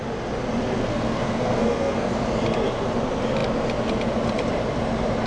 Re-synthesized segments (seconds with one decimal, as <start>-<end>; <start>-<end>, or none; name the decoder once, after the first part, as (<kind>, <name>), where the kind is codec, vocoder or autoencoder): 0.8-2.1 (codec, SNAC)